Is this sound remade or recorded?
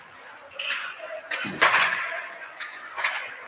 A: remade